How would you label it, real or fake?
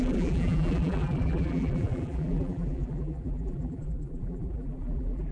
fake